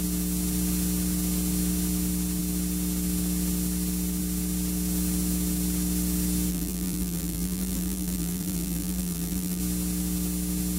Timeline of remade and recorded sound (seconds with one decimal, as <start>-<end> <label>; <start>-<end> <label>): 0.0-6.5 recorded; 6.5-9.6 remade; 9.6-10.8 recorded